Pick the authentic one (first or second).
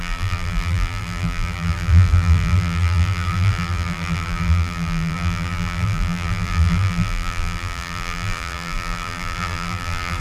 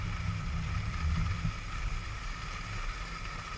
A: second